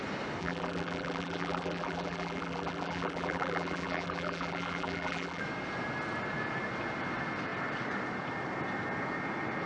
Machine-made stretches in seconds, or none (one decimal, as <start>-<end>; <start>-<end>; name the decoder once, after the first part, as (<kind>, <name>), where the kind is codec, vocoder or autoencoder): 0.4-5.4 (vocoder, BigVGAN v2)